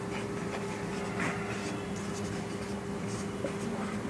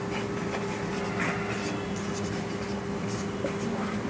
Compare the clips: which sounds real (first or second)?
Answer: second